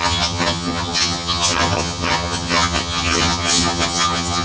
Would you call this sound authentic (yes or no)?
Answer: no